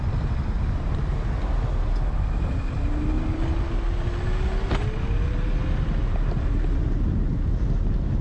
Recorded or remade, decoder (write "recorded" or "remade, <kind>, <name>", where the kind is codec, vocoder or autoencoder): recorded